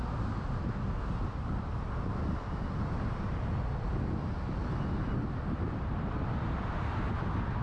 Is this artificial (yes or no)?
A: no